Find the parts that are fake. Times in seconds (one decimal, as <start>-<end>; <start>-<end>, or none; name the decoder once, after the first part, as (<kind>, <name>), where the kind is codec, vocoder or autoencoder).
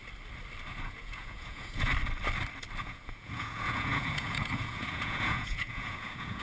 0.8-1.9 (vocoder, Vocos); 2.8-6.4